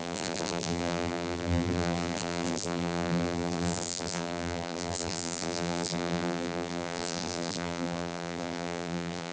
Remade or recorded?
remade